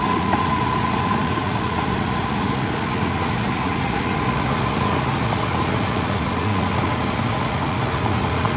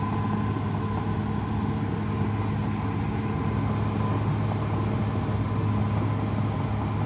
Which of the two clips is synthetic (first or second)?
first